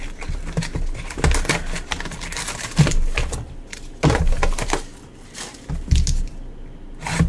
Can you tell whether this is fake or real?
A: real